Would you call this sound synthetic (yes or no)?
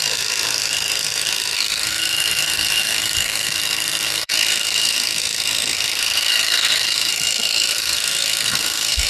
yes